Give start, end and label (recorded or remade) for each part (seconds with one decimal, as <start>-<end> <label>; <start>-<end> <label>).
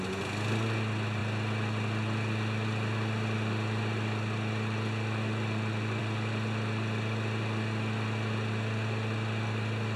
0.0-10.0 recorded